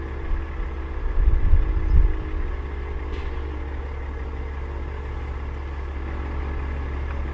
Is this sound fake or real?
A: real